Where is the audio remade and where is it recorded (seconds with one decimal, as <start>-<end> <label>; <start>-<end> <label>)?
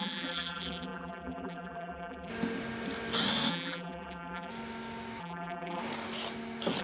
0.0-2.3 remade; 2.3-3.5 recorded; 3.5-4.5 remade; 4.5-5.2 recorded; 5.2-5.8 remade; 5.8-6.8 recorded